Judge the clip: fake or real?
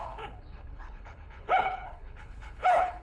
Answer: fake